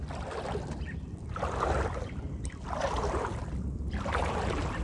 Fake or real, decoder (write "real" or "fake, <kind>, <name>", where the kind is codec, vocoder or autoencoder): real